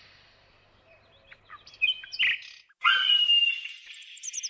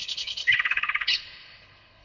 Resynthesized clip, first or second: second